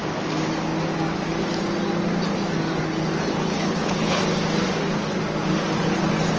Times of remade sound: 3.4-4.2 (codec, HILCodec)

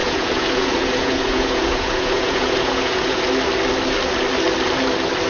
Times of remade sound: 0.0-3.2 (vocoder, Vocos)

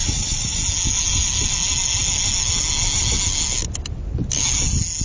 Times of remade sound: 0.0-0.6 (vocoder, WaveNeXt)

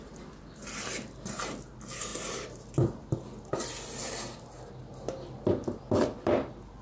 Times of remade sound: none

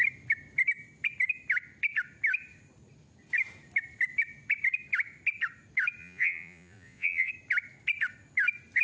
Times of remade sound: 6.0-7.3 (vocoder, Vocos)

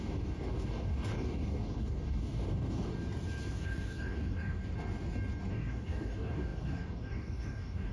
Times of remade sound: 0.0-2.9 (codec, DAC); 3.5-4.6; 5.5-7.9

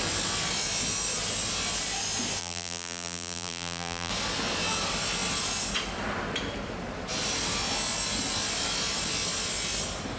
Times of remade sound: 2.4-4.1 (vocoder, BigVGAN v2)

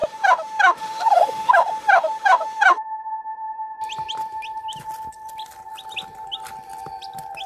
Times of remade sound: 0.0-2.8 (autoencoder, DAC-VAE)